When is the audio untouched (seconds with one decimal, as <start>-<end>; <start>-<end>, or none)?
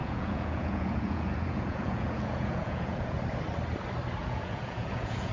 3.2-4.2